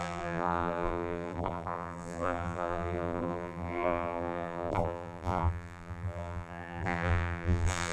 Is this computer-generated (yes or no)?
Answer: yes